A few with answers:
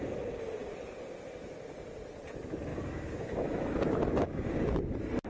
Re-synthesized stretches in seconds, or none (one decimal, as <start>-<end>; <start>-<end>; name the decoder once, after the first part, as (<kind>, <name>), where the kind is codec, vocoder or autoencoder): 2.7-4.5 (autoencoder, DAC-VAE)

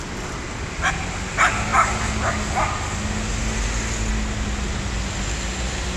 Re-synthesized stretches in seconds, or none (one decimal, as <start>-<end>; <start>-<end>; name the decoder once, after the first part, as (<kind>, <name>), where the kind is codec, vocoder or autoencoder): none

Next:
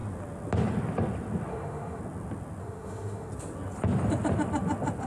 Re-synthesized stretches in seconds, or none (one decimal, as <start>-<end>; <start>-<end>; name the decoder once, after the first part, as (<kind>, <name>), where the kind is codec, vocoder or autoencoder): 1.5-2.0 (autoencoder, DAC-VAE); 2.6-3.3